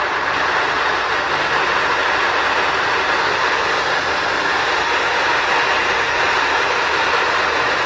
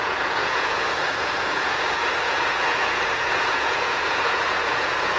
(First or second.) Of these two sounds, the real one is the first